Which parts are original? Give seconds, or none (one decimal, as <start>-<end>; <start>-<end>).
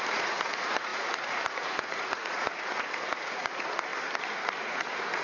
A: 3.9-4.6